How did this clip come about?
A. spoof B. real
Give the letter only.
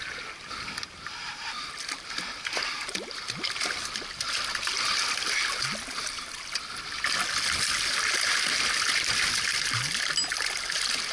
B